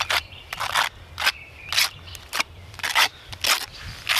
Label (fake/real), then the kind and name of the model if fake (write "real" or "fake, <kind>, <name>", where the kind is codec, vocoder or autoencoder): real